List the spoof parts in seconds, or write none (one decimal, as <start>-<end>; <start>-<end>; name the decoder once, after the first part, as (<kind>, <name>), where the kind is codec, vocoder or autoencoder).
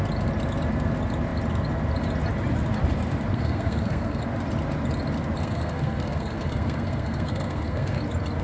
3.3-4.2 (codec, SNAC); 5.4-8.0